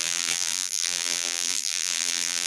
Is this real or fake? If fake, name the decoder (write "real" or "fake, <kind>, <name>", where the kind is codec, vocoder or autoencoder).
fake, vocoder, BigVGAN v2